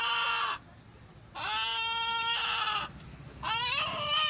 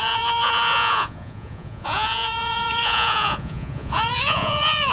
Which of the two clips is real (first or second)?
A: first